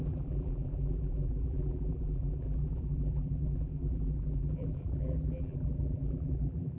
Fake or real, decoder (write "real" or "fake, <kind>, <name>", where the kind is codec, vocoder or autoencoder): fake, vocoder, BigVGAN v2